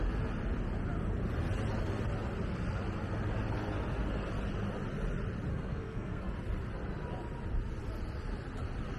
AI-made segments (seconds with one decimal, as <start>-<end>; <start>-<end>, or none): 5.5-6.3